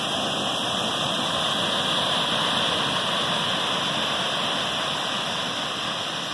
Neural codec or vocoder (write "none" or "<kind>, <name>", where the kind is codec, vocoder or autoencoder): none